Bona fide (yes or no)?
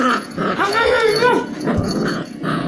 no